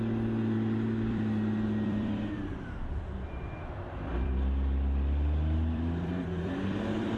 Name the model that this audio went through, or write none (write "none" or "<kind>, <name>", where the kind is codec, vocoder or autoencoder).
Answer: vocoder, BigVGAN v2